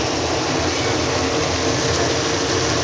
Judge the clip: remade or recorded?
recorded